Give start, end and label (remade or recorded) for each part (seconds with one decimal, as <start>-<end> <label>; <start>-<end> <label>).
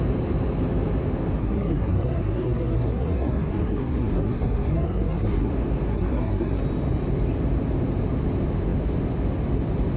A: 0.0-1.4 recorded; 1.4-5.5 remade; 5.5-5.9 recorded; 5.9-6.6 remade; 6.6-10.0 recorded